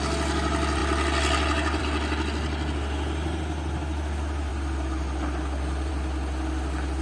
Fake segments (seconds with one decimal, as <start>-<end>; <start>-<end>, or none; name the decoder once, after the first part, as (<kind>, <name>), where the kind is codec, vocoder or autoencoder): none